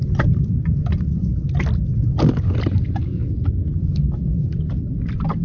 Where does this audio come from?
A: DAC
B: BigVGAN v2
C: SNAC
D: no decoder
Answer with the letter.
D